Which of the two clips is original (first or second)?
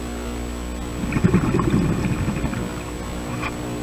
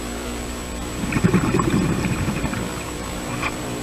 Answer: first